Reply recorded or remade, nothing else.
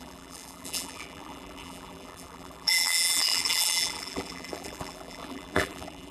remade